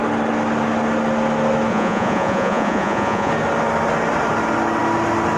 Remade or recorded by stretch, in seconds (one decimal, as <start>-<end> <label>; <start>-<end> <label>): 0.0-1.7 recorded; 1.7-3.3 remade; 3.3-5.4 recorded